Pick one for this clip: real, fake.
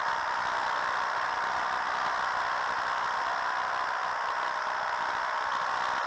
fake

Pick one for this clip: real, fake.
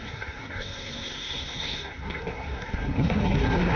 fake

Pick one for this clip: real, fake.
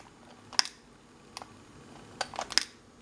real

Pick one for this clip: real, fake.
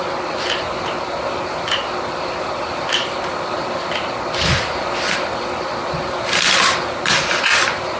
real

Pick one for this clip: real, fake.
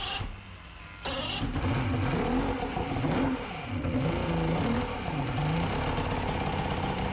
real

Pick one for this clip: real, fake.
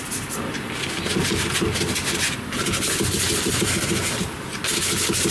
real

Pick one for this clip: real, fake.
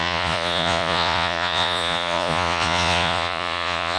fake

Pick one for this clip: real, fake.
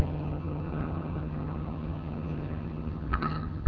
fake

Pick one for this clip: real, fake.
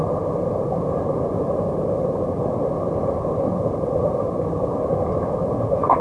real